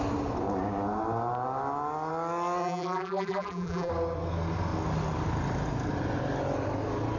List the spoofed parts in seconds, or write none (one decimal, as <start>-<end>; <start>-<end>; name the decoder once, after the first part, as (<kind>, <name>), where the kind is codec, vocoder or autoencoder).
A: 2.6-3.9 (vocoder, BigVGAN v2)